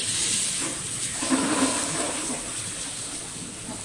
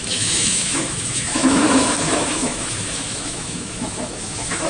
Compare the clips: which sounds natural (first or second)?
first